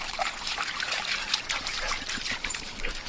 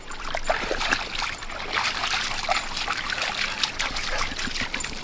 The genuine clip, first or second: second